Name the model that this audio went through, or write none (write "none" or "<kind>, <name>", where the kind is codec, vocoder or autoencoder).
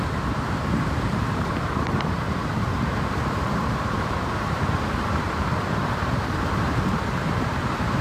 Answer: vocoder, BigVGAN v2